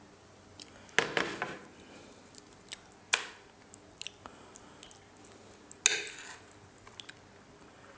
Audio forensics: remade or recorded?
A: recorded